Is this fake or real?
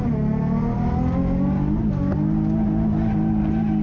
real